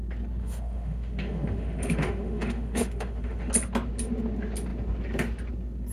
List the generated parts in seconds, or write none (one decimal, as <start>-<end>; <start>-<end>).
0.4-3.5